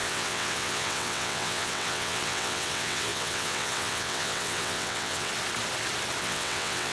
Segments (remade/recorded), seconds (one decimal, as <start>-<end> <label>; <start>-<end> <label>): 0.0-5.3 remade; 5.3-6.2 recorded; 6.2-6.9 remade